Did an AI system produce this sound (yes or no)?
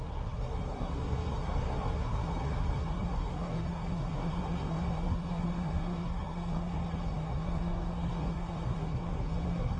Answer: yes